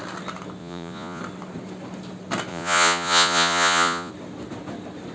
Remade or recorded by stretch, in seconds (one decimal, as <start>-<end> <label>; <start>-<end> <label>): 0.0-0.6 recorded; 0.6-1.2 remade; 1.2-2.5 recorded; 2.5-4.1 remade; 4.1-5.1 recorded